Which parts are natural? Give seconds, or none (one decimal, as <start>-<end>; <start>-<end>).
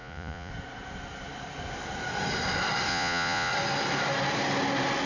0.5-2.9; 3.5-5.1